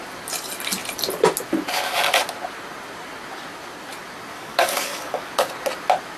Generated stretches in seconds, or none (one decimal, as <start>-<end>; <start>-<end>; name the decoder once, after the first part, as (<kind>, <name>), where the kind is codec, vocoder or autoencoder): 4.3-5.3 (codec, DAC)